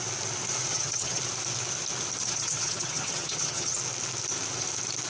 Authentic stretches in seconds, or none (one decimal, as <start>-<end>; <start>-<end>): 0.0-0.7; 1.2-2.2; 3.8-5.1